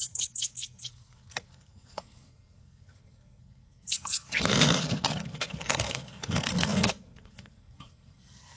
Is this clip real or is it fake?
fake